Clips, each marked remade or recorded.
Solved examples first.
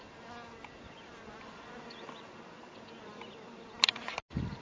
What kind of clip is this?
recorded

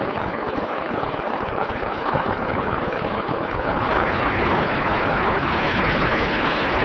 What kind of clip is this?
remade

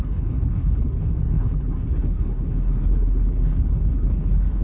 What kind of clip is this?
remade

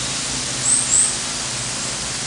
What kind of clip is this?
recorded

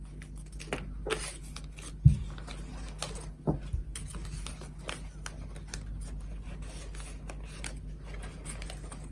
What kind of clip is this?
recorded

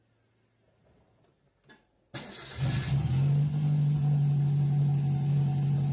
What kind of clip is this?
recorded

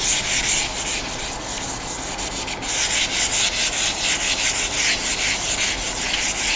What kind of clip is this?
recorded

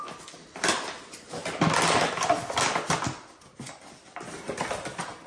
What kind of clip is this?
recorded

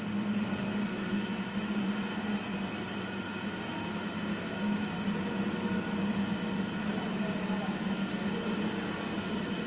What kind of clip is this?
recorded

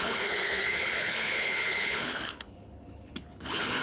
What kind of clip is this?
remade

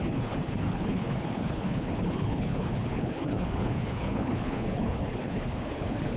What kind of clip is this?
remade